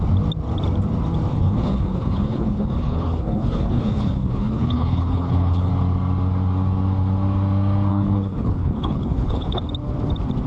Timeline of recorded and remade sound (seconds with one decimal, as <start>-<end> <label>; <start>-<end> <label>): 0.0-1.3 recorded; 1.3-5.7 remade; 5.7-7.9 recorded; 7.9-9.7 remade; 9.7-10.5 recorded